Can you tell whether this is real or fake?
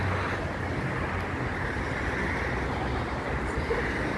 real